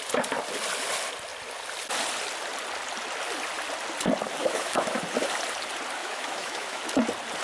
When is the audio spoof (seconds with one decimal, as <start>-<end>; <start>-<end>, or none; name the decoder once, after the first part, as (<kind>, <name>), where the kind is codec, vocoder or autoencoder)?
4.4-5.0 (autoencoder, DAC-VAE); 6.0-6.8